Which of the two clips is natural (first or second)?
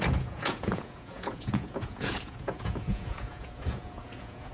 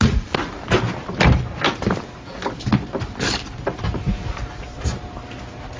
second